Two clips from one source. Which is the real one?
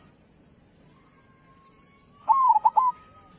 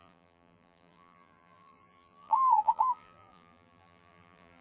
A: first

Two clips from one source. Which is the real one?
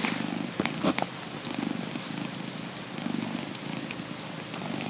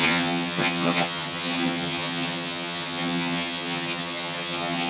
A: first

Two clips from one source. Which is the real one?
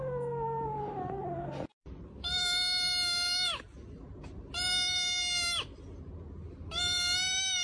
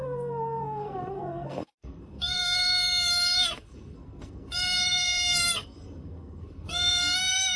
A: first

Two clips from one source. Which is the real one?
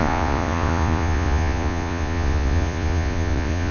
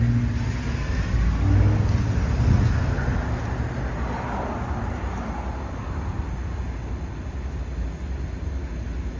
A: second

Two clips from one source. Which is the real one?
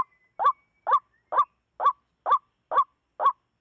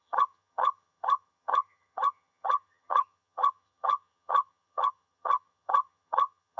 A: first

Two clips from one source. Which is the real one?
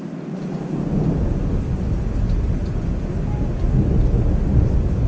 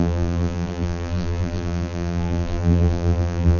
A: first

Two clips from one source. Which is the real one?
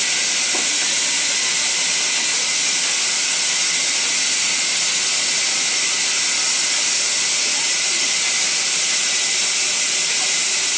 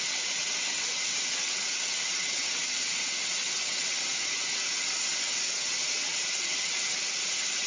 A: first